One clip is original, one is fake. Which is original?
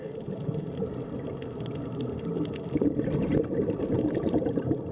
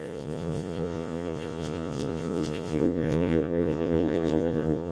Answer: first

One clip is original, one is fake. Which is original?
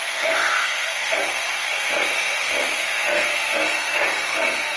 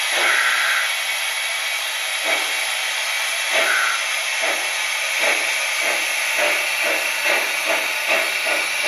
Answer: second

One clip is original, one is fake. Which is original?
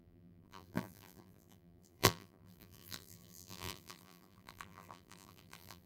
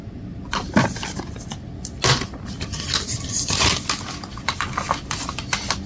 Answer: second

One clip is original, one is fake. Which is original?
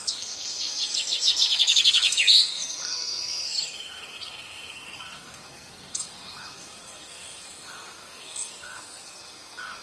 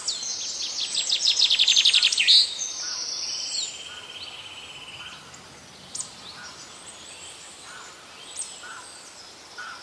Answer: second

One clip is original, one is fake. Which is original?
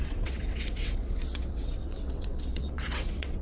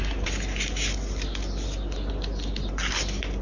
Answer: second